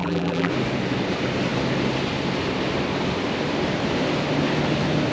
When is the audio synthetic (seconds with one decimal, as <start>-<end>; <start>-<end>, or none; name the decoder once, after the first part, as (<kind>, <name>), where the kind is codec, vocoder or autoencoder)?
0.0-0.5 (vocoder, BigVGAN v2)